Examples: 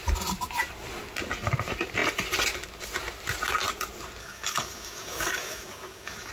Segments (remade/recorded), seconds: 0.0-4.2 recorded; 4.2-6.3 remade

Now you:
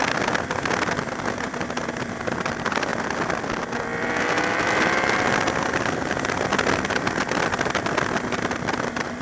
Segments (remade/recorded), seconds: 0.0-2.9 remade; 2.9-6.9 recorded; 6.9-9.2 remade

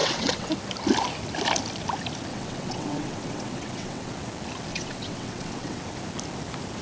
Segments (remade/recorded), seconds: 0.0-0.5 remade; 0.5-2.3 recorded; 2.3-4.1 remade; 4.1-4.7 recorded; 4.7-5.8 remade; 5.8-6.8 recorded

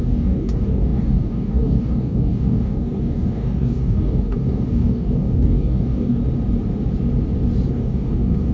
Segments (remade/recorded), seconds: 0.0-6.2 remade; 6.2-7.7 recorded; 7.7-8.5 remade